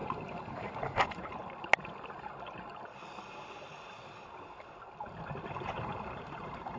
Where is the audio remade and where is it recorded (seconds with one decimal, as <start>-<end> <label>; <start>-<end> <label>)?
0.0-1.4 remade; 1.4-5.5 recorded; 5.5-6.8 remade